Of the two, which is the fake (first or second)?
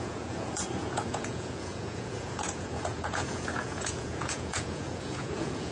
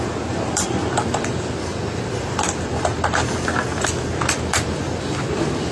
first